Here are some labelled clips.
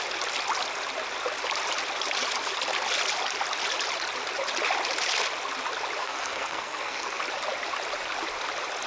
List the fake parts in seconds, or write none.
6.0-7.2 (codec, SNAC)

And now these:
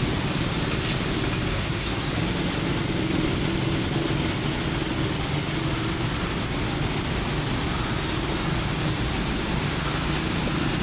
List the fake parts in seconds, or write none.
1.5-2.1 (codec, SNAC)